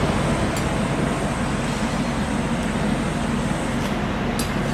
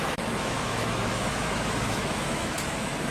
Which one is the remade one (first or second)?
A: second